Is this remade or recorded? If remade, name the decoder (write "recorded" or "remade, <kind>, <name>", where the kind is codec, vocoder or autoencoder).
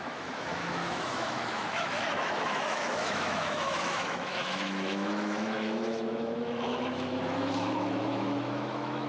remade, autoencoder, DAC-VAE